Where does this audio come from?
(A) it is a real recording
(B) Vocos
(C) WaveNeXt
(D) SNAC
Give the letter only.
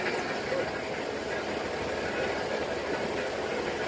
A